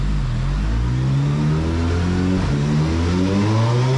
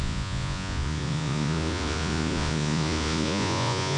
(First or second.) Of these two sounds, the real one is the first